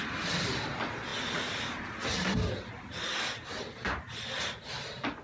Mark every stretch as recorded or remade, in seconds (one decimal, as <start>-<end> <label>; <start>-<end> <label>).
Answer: 0.0-5.2 recorded